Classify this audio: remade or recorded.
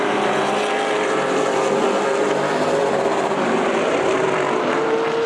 recorded